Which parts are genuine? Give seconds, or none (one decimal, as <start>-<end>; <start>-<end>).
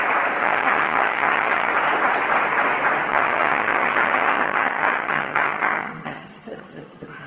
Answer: 0.0-0.4; 1.7-3.1